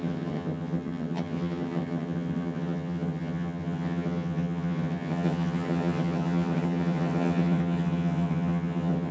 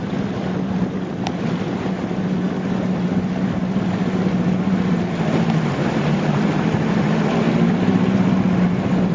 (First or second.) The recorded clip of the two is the second